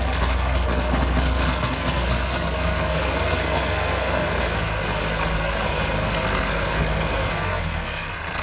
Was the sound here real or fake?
fake